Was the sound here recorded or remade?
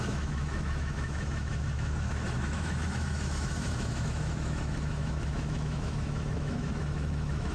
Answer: remade